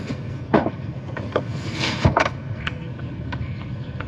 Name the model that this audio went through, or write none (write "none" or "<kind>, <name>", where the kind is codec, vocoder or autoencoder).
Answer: codec, SNAC